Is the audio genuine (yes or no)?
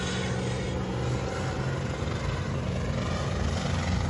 yes